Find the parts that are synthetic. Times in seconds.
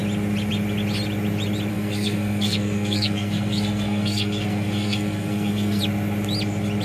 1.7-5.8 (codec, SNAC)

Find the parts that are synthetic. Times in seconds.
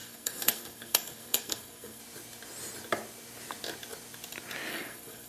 0.0-2.0 (codec, SNAC); 4.7-5.3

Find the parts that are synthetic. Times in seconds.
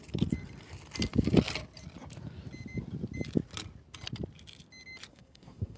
5.1-5.8 (codec, SNAC)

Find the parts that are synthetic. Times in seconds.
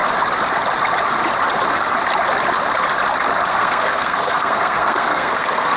3.5-5.8 (codec, SNAC)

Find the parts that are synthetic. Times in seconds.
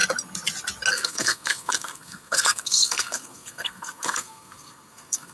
0.9-5.3 (codec, SNAC)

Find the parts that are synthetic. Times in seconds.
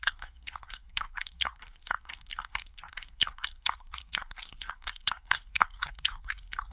0.0-6.7 (codec, SNAC)